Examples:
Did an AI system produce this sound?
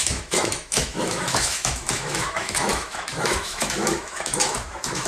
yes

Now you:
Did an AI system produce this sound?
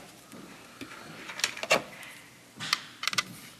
no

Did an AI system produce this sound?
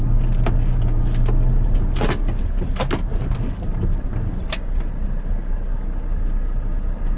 no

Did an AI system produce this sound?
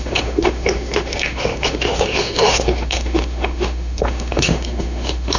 yes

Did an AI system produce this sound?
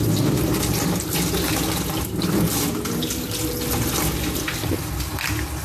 no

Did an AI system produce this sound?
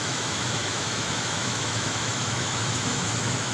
yes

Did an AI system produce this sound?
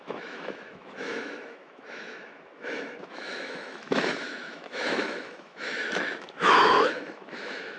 yes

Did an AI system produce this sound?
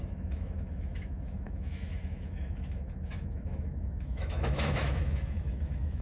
yes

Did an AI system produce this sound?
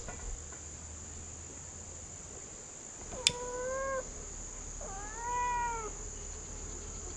no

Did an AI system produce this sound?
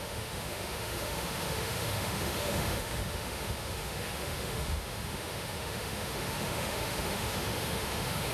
yes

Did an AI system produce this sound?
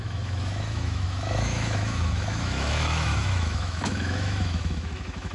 yes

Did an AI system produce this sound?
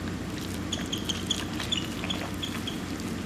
no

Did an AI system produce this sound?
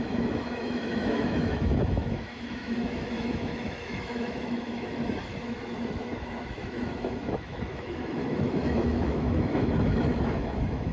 yes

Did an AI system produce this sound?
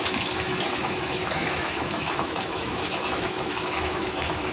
yes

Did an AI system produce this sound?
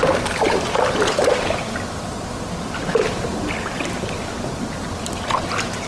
no